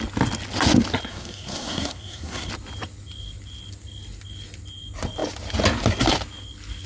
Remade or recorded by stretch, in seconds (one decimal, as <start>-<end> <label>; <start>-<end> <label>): 0.0-1.1 recorded; 1.1-2.5 remade; 2.5-6.9 recorded